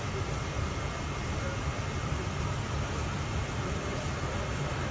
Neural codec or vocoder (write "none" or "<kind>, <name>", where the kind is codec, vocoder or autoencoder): none